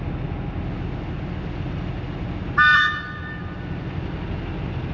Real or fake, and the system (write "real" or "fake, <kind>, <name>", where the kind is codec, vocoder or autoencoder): real